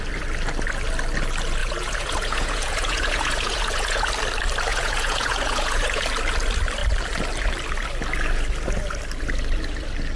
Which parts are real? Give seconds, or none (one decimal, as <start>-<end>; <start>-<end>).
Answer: 0.0-1.6; 4.1-4.7; 6.0-10.2